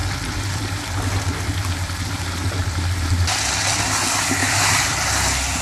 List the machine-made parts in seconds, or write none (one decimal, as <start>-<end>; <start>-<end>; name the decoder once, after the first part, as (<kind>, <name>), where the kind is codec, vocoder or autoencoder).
0.0-1.2 (vocoder, BigVGAN v2); 2.6-3.8; 4.4-5.1